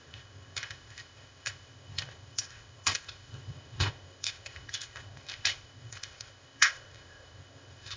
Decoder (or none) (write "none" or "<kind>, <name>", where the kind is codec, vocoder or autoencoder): codec, ZipCodec